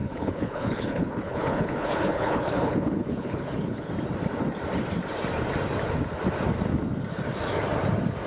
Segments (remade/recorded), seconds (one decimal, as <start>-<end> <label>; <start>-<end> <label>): 0.0-3.9 remade; 3.9-8.3 recorded